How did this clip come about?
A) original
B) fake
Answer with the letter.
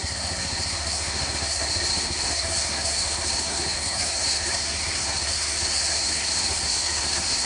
B